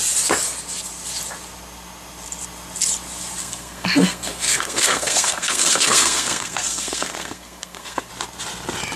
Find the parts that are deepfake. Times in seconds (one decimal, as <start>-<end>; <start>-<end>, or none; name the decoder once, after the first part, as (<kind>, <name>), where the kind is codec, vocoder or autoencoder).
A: 3.4-8.1 (codec, SNAC)